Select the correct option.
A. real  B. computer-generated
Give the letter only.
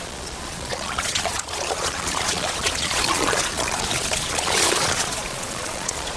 B